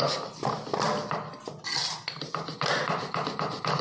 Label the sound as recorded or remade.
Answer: recorded